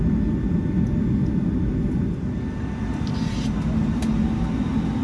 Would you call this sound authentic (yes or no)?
yes